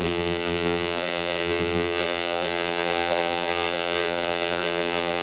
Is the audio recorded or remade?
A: remade